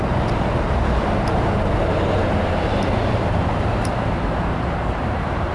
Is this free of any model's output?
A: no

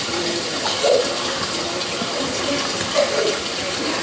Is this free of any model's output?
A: no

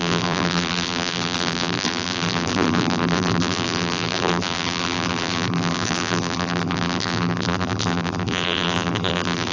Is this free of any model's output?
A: no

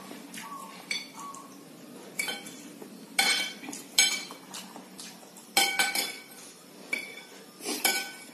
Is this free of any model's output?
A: no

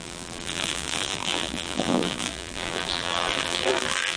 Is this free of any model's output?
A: no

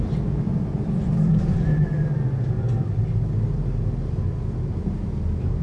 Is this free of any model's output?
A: yes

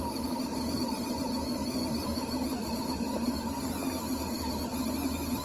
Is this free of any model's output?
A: yes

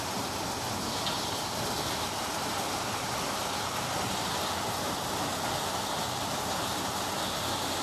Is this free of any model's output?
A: yes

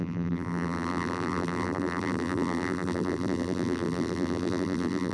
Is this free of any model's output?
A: no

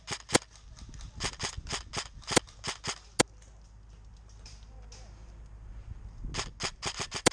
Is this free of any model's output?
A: yes